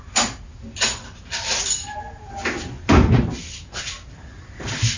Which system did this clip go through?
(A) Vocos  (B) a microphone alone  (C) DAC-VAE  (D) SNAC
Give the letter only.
B